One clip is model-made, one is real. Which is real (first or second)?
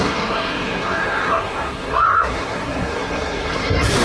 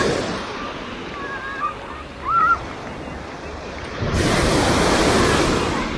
second